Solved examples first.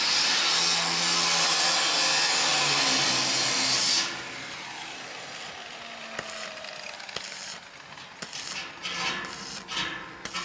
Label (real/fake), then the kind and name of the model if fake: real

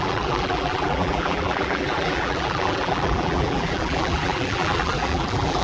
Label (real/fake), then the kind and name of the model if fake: fake, vocoder, BigVGAN v2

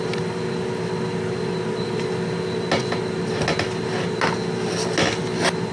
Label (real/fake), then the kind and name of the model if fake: real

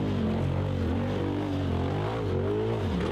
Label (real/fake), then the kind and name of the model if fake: real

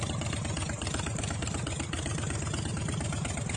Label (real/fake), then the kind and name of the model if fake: fake, vocoder, BigVGAN v2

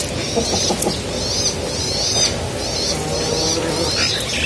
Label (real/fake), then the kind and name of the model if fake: real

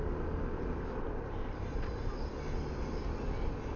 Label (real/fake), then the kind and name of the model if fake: real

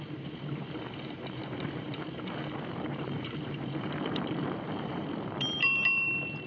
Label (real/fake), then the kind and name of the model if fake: fake, vocoder, BigVGAN v2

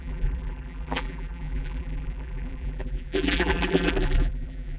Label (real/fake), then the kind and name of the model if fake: fake, vocoder, BigVGAN v2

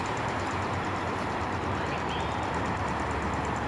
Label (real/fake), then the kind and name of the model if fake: fake, vocoder, BigVGAN v2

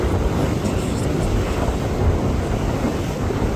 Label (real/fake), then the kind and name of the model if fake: real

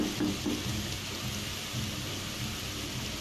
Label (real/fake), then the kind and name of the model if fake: real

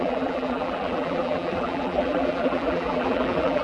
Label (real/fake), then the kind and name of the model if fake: fake, vocoder, BigVGAN v2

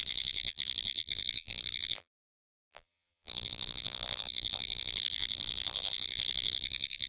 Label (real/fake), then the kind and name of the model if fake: fake, vocoder, BigVGAN v2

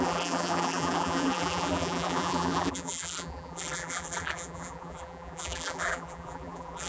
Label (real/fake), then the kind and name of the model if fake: fake, vocoder, BigVGAN v2